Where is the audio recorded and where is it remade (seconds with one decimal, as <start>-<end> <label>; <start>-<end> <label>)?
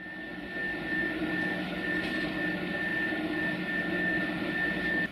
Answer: 0.0-5.1 recorded